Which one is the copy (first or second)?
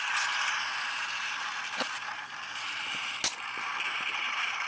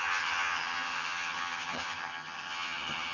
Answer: second